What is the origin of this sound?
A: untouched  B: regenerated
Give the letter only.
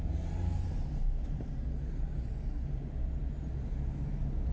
A